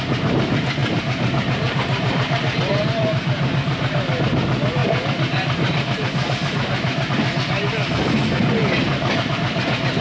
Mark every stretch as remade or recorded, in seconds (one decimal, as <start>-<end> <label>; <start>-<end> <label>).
0.0-0.8 recorded; 0.8-4.2 remade; 4.2-4.8 recorded; 4.8-7.1 remade; 7.1-8.6 recorded; 8.6-9.4 remade; 9.4-10.0 recorded